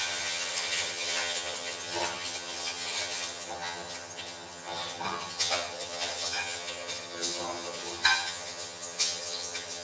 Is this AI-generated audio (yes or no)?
yes